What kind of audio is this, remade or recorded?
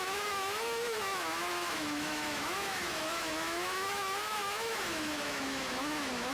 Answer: remade